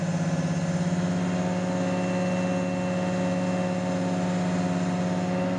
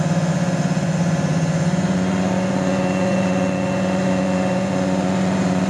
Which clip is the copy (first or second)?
second